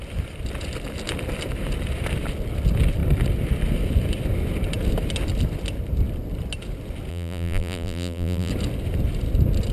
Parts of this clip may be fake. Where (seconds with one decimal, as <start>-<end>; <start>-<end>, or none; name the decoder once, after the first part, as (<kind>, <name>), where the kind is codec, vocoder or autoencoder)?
7.1-8.5 (vocoder, BigVGAN v2)